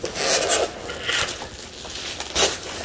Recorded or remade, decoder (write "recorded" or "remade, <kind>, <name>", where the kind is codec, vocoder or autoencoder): recorded